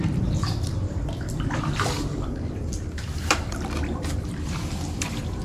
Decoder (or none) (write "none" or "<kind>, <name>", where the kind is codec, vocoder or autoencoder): vocoder, BigVGAN v2